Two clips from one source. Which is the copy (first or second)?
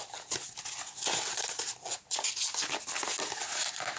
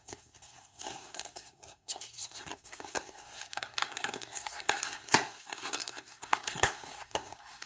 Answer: second